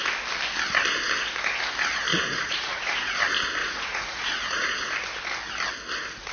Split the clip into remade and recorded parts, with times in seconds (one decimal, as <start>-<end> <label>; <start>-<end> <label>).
0.0-2.1 recorded; 2.1-3.2 remade; 3.2-3.6 recorded; 3.6-4.9 remade; 4.9-6.3 recorded